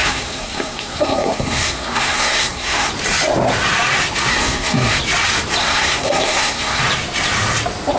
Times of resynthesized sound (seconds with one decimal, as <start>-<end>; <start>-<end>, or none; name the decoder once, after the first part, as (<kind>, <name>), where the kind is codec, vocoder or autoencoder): 0.0-2.9 (codec, SNAC); 4.3-5.0; 5.6-6.8

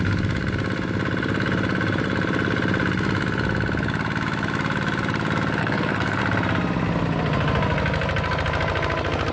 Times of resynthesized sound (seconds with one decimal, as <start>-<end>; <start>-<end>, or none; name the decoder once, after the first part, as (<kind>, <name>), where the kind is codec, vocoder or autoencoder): 5.6-6.2 (codec, SNAC)

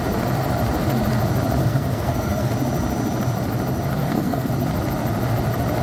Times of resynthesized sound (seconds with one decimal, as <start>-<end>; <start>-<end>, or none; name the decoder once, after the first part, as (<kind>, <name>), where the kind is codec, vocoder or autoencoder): 1.6-2.5 (codec, SNAC); 4.0-4.5